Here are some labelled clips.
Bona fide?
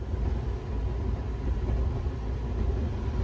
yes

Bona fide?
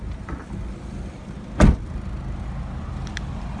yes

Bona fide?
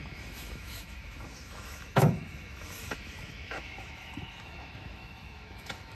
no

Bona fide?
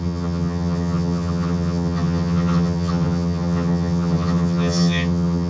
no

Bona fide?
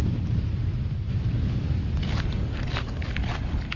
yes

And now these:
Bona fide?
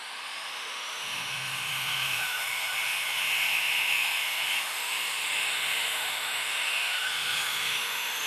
no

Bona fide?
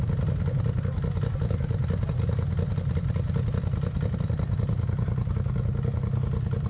yes